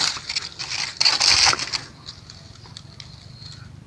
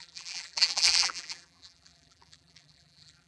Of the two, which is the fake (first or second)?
second